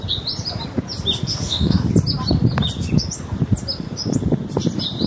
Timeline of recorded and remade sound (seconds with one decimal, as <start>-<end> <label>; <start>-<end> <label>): 0.0-1.3 recorded; 1.3-1.9 remade; 1.9-5.1 recorded